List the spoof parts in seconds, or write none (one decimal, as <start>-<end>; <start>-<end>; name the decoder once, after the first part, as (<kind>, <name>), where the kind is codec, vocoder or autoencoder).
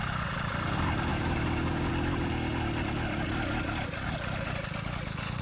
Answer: 1.1-1.9 (codec, DAC)